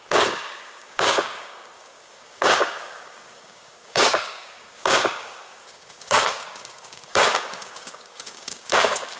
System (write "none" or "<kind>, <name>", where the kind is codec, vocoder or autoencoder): codec, DAC